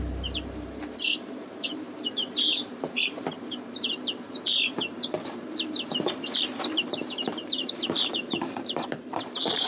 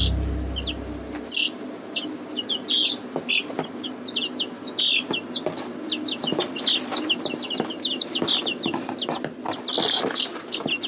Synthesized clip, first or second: first